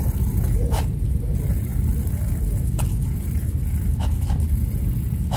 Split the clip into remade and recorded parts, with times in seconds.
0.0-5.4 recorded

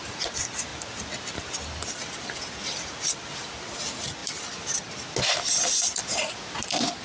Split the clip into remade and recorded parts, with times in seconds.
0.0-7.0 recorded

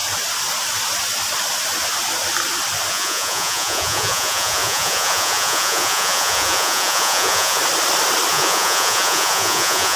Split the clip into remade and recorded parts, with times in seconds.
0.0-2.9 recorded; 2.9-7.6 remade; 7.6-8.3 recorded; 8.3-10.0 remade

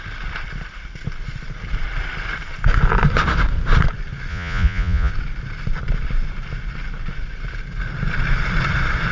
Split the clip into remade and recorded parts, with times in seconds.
0.0-4.3 recorded; 4.3-5.1 remade; 5.1-9.1 recorded

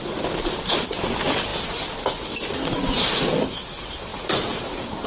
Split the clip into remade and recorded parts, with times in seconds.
0.0-5.1 recorded